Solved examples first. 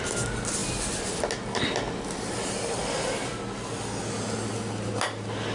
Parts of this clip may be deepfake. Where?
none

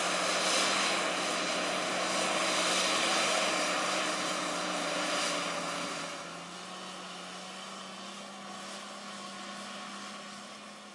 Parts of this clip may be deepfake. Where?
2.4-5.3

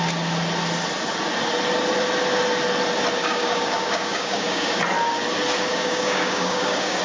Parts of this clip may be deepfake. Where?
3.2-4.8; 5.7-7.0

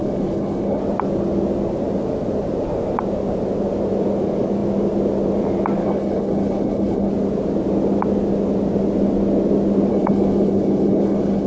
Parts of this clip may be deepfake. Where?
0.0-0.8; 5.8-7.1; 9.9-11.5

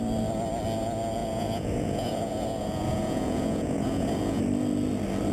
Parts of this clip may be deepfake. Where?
1.2-4.4

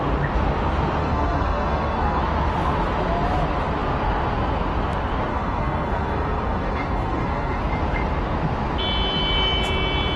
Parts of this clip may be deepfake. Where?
1.0-2.2; 5.3-7.6

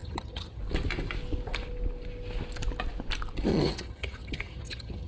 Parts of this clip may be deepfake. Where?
0.0-0.6; 3.5-5.1

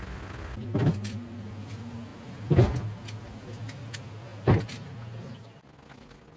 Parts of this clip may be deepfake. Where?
none